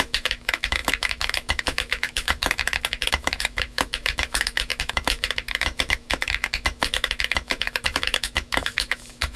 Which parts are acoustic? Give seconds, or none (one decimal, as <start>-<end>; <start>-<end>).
none